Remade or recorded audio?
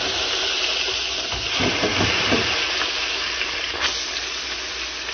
recorded